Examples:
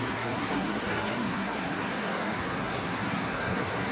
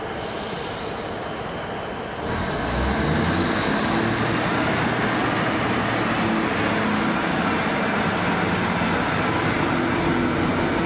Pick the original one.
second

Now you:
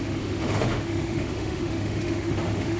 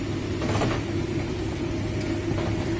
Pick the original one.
second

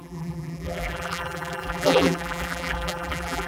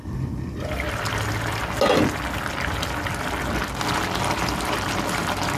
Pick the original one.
second